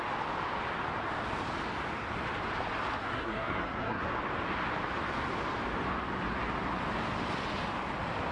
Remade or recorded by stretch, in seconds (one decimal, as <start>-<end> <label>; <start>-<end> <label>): 0.0-3.0 recorded; 3.0-4.0 remade; 4.0-8.3 recorded